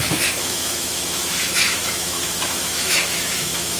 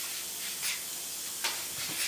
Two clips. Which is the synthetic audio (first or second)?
first